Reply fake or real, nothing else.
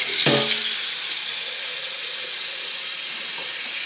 real